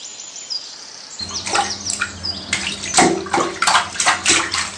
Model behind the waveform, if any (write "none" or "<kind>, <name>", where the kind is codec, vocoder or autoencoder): none